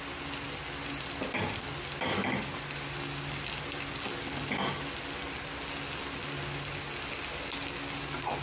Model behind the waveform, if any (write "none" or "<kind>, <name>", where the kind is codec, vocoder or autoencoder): none